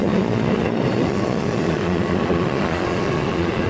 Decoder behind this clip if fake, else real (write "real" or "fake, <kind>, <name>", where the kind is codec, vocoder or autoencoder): fake, vocoder, Vocos